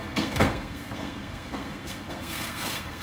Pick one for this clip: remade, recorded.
remade